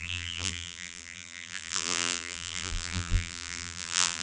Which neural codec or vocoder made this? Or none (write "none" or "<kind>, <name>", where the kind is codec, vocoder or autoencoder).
vocoder, BigVGAN v2